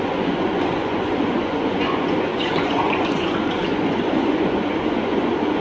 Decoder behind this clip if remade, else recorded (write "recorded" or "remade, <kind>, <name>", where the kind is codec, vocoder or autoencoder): remade, vocoder, Vocos